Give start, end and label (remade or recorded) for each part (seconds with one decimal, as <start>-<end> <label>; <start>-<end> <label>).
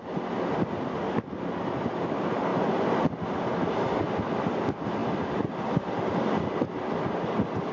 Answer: 0.0-7.7 recorded